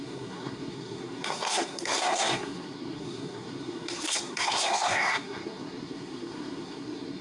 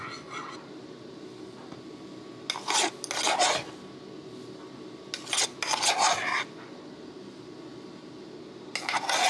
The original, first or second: second